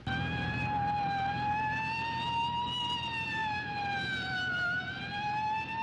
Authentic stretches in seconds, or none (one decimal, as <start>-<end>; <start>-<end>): 0.0-5.8